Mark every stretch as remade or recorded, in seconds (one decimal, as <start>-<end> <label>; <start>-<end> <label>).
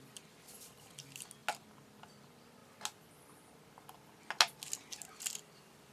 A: 0.0-5.9 recorded